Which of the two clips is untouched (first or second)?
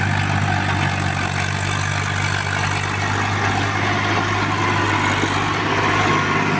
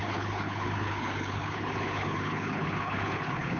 first